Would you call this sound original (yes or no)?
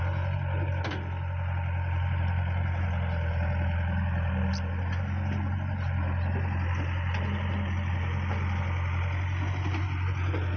yes